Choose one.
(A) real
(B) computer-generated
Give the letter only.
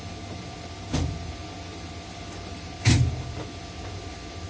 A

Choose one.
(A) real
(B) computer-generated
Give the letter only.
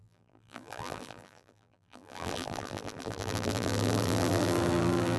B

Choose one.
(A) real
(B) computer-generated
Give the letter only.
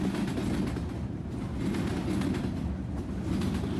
A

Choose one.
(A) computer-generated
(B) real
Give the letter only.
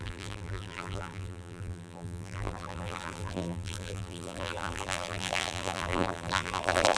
A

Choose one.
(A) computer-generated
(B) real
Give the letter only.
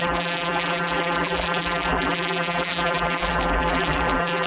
A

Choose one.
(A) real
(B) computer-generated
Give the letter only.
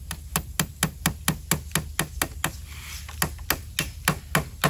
A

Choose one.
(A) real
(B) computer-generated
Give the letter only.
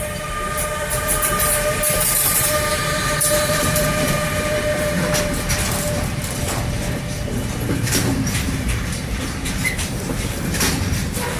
B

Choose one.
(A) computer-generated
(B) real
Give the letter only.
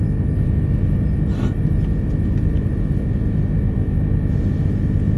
B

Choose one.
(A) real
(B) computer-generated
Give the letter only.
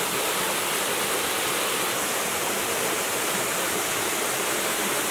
A